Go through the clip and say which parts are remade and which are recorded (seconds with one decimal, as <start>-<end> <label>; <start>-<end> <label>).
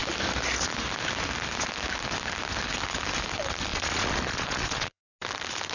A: 0.0-3.7 recorded; 3.7-5.0 remade; 5.0-5.7 recorded